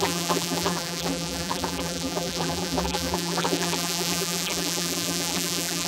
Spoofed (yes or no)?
yes